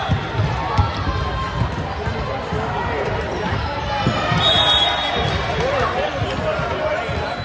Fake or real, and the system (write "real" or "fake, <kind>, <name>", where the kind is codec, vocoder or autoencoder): real